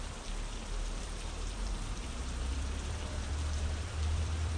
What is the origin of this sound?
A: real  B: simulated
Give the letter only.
B